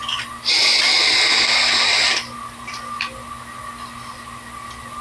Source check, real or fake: real